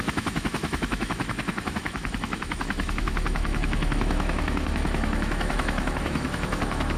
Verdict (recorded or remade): remade